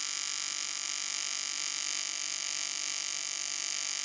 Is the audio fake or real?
real